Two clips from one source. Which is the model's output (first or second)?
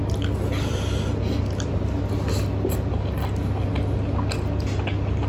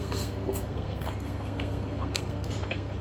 second